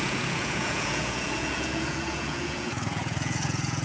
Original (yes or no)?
no